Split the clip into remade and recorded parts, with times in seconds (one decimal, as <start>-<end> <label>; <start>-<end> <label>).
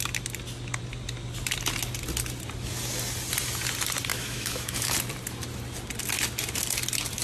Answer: 0.0-4.1 recorded; 4.1-4.9 remade; 4.9-7.2 recorded